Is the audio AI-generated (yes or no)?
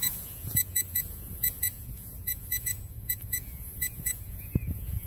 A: yes